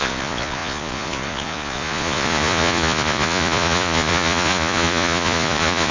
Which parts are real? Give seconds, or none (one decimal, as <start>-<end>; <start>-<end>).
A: none